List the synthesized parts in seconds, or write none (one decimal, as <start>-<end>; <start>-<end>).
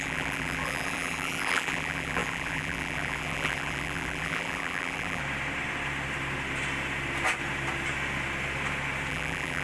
0.0-5.2; 9.1-9.6